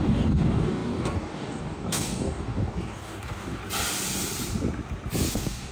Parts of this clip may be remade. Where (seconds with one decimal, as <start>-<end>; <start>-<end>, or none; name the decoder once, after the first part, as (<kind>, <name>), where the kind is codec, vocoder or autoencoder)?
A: 0.0-3.6 (codec, DAC); 5.3-5.7